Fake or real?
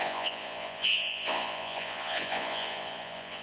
fake